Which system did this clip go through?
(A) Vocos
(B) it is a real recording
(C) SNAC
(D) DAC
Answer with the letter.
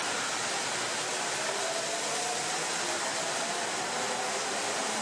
B